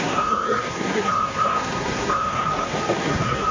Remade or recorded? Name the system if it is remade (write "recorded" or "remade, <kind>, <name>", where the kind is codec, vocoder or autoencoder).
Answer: remade, codec, SNAC